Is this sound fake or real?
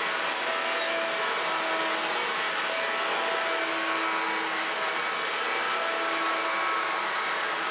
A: real